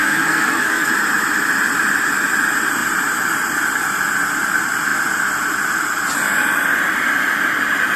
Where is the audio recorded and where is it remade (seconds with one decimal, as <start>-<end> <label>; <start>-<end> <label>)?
0.0-0.9 remade; 0.9-8.0 recorded